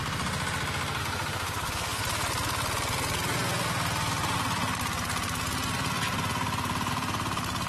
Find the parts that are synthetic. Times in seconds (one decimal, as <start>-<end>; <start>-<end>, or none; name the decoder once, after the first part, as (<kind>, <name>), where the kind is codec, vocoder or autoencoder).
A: 1.0-2.0 (autoencoder, DAC-VAE)